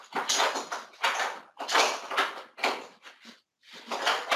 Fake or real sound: real